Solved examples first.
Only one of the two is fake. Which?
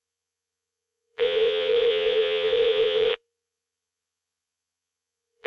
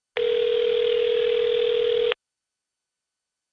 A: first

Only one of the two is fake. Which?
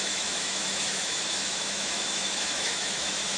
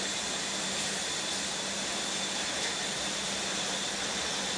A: first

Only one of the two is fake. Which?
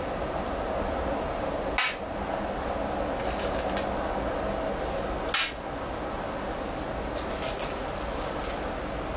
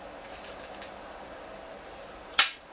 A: second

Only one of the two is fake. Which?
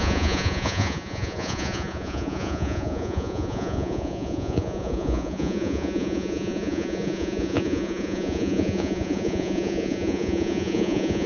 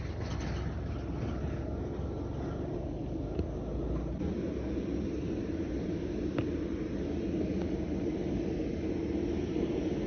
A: first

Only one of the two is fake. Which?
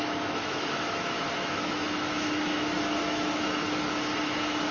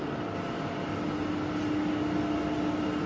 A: first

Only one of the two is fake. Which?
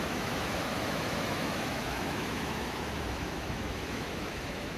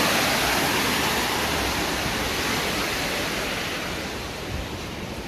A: first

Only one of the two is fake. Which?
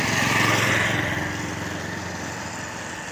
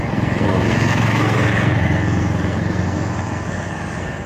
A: second